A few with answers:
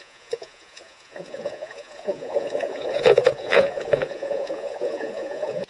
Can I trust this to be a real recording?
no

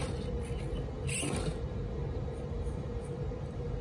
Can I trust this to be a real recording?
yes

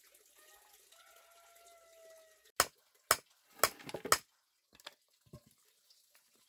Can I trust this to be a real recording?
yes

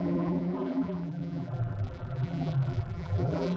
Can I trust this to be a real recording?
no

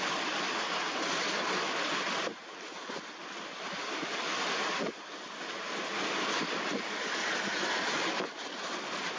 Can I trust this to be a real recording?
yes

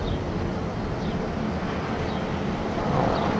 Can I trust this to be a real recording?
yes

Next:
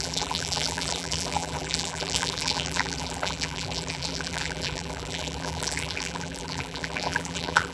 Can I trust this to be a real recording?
no